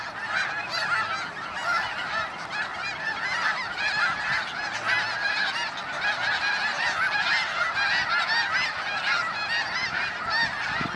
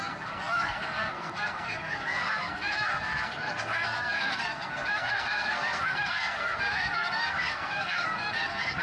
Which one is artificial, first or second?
second